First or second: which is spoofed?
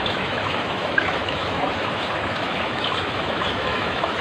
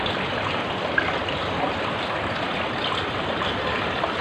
first